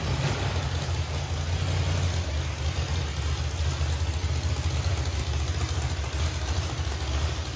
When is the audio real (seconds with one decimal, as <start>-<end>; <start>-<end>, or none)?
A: 0.0-7.6